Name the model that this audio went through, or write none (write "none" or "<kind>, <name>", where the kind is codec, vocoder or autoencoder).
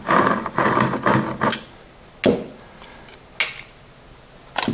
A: none